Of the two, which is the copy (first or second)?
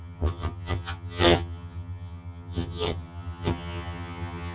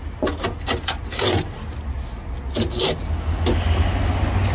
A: first